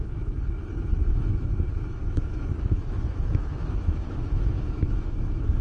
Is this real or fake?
fake